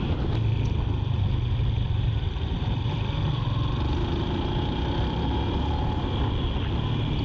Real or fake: real